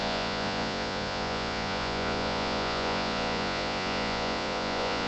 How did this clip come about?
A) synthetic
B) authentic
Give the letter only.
A